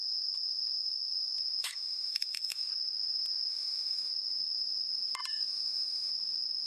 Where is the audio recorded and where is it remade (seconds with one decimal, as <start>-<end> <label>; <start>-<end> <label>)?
0.0-1.6 recorded; 1.6-2.7 remade; 2.7-3.5 recorded; 3.5-4.1 remade; 4.1-5.3 recorded; 5.3-6.1 remade; 6.1-6.7 recorded